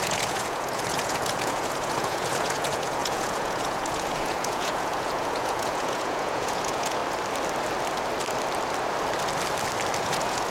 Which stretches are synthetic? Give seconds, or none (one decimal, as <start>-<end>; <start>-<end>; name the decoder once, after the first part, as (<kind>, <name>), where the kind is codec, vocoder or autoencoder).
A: 0.0-7.0 (vocoder, Vocos); 10.0-10.5